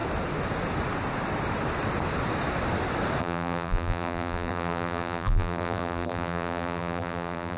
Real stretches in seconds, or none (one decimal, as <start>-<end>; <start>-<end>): 0.0-3.2